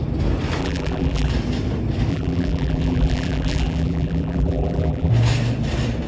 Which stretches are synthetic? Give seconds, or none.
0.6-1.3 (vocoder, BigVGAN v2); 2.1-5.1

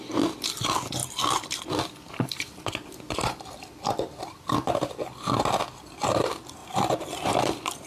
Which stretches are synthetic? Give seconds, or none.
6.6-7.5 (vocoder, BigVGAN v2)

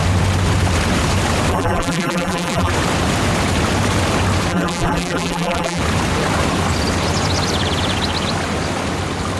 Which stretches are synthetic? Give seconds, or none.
1.5-2.7 (vocoder, BigVGAN v2); 4.5-5.8

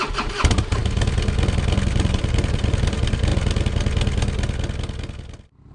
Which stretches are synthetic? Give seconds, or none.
0.0-0.8 (vocoder, BigVGAN v2); 1.9-3.3

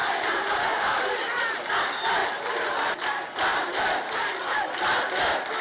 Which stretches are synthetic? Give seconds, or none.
0.0-1.7 (vocoder, BigVGAN v2); 2.2-2.7; 3.5-4.6